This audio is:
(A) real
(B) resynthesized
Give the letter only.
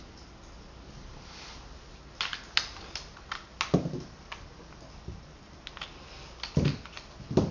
A